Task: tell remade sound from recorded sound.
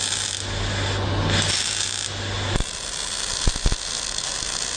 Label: recorded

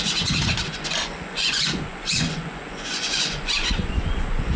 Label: remade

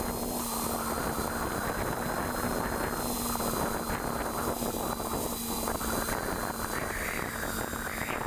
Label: recorded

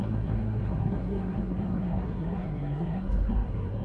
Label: remade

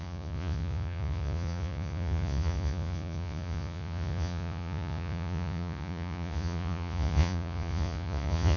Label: remade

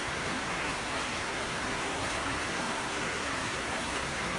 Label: remade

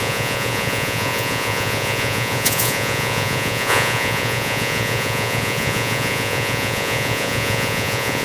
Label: remade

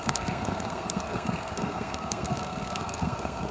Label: remade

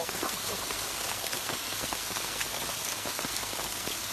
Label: remade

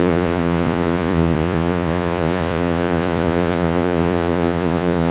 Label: remade